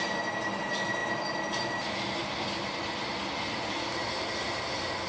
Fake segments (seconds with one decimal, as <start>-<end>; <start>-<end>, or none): none